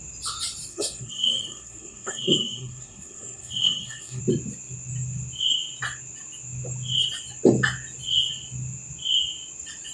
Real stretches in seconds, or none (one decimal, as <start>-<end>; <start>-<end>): 0.0-0.7; 4.2-9.9